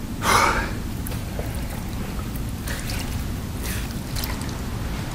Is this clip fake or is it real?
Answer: real